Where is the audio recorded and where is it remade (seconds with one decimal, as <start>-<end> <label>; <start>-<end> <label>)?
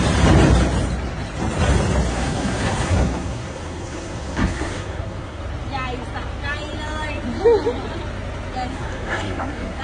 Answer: 0.0-2.1 recorded; 2.1-5.4 remade; 5.4-8.7 recorded; 8.7-9.8 remade